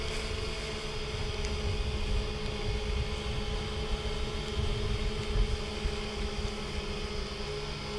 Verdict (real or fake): real